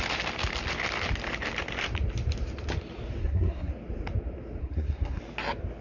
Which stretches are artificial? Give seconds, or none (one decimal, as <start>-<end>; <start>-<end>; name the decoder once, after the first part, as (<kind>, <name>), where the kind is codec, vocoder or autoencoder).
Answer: 3.2-3.7 (codec, SNAC); 4.6-5.2